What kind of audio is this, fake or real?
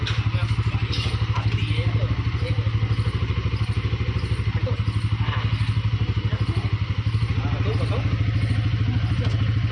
real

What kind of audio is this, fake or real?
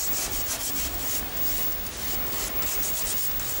real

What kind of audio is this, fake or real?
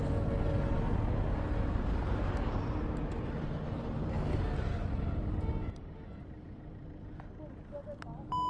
real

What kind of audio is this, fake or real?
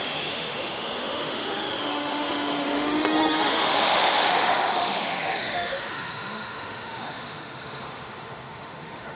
fake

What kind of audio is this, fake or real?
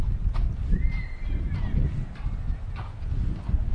real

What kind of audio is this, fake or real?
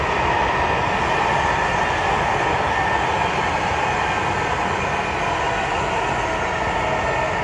real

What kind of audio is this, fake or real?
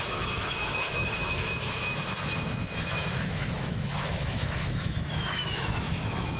fake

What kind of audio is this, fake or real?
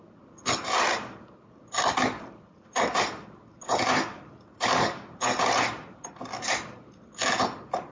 real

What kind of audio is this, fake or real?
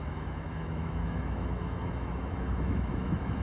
fake